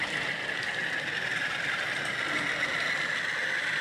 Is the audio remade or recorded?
recorded